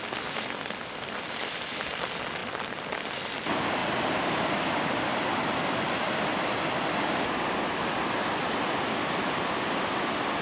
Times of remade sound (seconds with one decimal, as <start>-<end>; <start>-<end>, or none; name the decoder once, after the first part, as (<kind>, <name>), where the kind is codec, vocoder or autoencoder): none